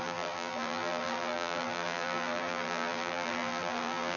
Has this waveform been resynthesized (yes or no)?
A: yes